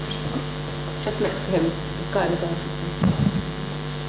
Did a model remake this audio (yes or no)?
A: yes